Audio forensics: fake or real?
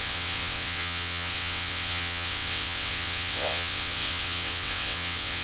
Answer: fake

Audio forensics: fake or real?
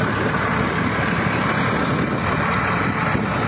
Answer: real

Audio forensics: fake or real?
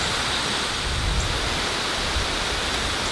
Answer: real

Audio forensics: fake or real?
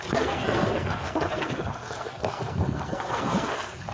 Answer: fake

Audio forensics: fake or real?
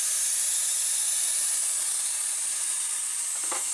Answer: fake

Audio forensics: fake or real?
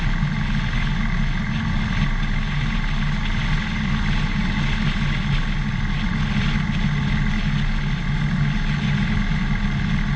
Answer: real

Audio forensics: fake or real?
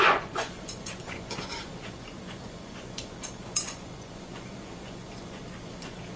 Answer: fake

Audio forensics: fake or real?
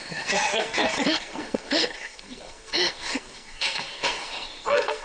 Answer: fake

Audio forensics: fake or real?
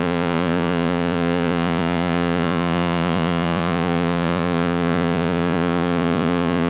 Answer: fake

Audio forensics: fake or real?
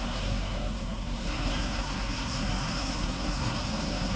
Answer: fake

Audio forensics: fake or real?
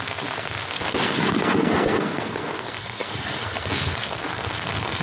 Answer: fake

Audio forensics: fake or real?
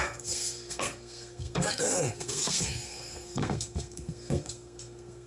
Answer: fake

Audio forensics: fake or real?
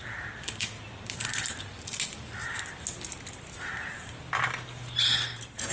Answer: fake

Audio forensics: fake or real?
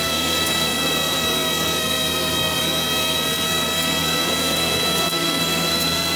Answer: fake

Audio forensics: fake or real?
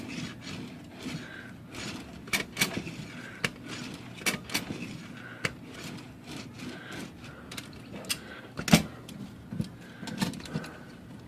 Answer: real